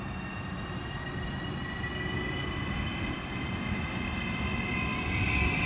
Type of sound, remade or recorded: recorded